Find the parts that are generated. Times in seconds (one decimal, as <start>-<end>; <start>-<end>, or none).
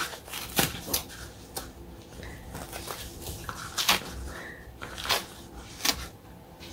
0.0-1.0; 3.2-5.2; 5.9-6.7